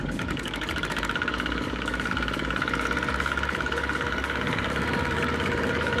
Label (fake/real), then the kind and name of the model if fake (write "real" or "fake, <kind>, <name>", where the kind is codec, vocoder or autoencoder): fake, codec, DAC